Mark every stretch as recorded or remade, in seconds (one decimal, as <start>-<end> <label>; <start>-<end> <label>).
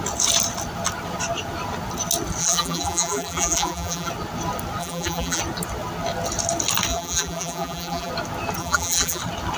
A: 0.0-2.4 recorded; 2.4-4.1 remade; 4.1-4.8 recorded; 4.8-5.4 remade; 5.4-6.9 recorded; 6.9-8.1 remade; 8.1-8.6 recorded; 8.6-9.2 remade; 9.2-9.6 recorded